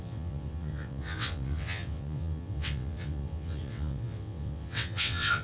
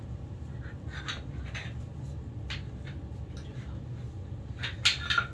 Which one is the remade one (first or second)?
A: first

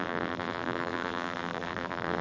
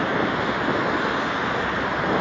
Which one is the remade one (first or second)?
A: first